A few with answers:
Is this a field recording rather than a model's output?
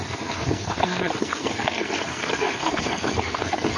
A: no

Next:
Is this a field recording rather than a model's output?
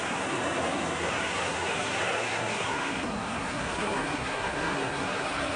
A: no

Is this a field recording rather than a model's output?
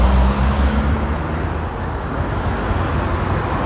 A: yes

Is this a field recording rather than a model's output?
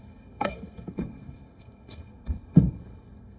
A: no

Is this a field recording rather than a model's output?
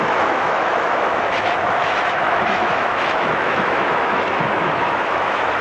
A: no